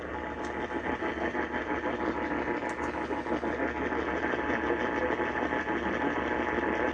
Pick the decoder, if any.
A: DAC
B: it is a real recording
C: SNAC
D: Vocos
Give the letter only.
B